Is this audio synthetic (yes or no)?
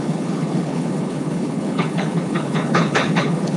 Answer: yes